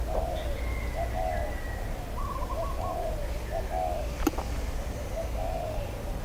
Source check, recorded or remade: recorded